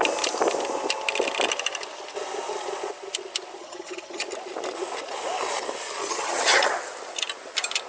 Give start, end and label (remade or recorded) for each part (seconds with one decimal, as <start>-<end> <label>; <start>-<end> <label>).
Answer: 0.0-3.6 recorded; 3.6-4.2 remade; 4.2-6.0 recorded; 6.0-6.7 remade; 6.7-7.9 recorded